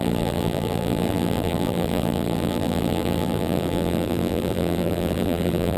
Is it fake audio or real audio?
fake